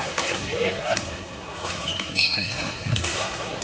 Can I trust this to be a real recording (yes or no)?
no